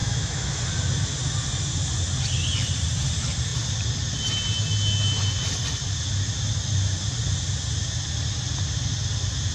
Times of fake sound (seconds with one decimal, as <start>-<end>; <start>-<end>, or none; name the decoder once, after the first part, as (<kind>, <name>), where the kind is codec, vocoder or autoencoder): 0.0-0.6 (autoencoder, DAC-VAE)